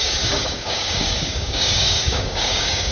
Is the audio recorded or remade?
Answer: remade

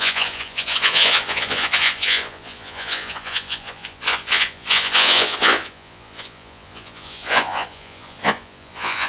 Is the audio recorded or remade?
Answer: remade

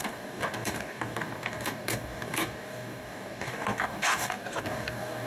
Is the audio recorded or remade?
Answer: remade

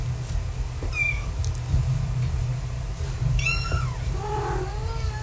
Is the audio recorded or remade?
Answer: recorded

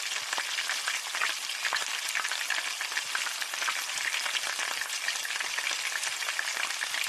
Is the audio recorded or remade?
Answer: recorded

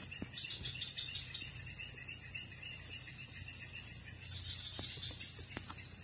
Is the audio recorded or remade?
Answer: recorded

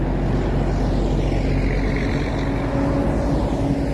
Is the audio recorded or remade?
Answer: recorded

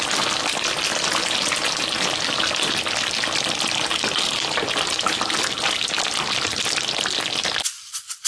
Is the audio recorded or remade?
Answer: recorded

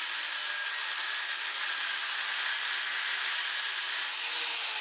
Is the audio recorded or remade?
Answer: recorded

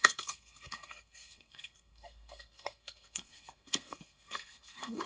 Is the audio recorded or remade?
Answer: remade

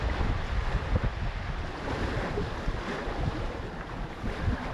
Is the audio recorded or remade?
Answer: recorded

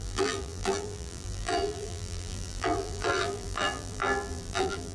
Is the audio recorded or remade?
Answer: remade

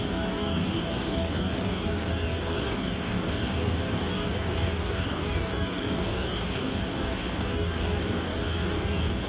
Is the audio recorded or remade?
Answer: remade